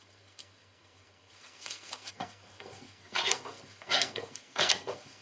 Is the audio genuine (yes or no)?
no